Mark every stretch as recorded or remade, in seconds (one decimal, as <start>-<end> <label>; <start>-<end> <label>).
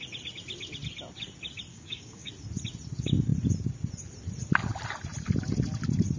0.0-1.7 recorded; 1.7-2.3 remade; 2.3-6.2 recorded